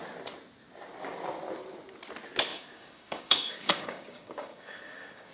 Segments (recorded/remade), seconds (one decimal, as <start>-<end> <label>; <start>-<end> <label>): 0.0-2.5 recorded; 2.5-5.3 remade